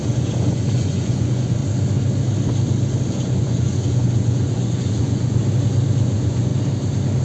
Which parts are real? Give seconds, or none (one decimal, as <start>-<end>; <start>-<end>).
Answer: 1.6-3.1; 5.4-6.0; 6.5-7.2